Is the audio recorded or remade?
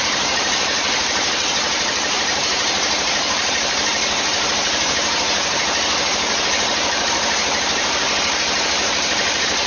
remade